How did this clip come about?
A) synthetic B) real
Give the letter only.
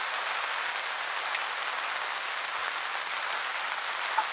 B